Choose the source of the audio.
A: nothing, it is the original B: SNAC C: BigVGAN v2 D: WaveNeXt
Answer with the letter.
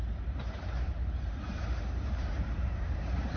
C